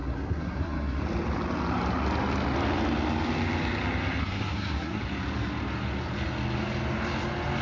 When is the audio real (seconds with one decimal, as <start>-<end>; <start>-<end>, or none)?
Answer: 1.0-4.2; 5.0-7.6